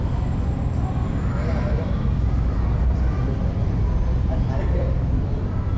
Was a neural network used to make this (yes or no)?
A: no